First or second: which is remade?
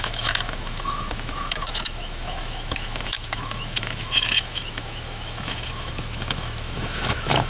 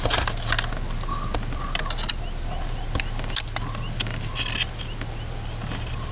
first